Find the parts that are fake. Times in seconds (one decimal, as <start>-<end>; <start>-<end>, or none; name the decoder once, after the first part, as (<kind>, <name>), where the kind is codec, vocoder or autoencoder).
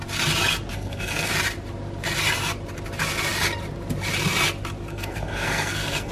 0.7-1.3 (codec, SNAC); 4.9-6.1